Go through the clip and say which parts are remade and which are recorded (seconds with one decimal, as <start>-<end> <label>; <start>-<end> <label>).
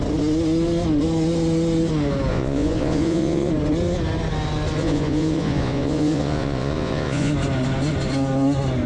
0.0-2.3 recorded; 2.3-3.5 remade; 3.5-4.8 recorded; 4.8-7.3 remade; 7.3-8.9 recorded